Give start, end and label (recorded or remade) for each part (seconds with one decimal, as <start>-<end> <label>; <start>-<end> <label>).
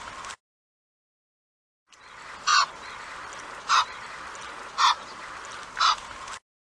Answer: 0.0-6.6 recorded